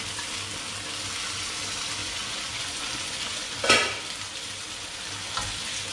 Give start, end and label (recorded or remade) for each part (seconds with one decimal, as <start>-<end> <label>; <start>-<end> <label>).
0.0-2.0 recorded; 2.0-3.6 remade; 3.6-5.9 recorded